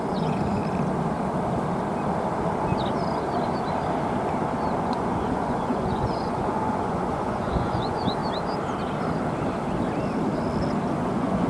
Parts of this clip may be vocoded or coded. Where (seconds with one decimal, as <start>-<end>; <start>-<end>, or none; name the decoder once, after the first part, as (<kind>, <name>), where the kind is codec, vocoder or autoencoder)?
0.0-0.6 (vocoder, Vocos); 4.8-8.2; 10.9-11.5